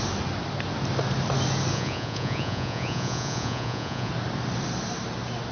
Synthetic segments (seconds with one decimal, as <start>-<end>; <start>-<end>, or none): 1.7-4.1